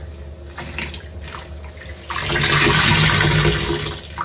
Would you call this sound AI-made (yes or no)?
no